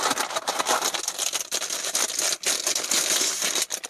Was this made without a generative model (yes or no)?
yes